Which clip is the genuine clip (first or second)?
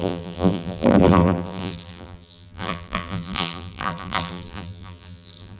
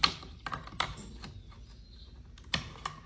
second